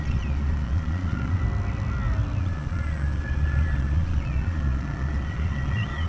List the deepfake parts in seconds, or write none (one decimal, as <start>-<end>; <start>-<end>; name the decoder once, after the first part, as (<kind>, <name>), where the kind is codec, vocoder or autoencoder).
0.0-1.4 (vocoder, Vocos); 2.4-6.1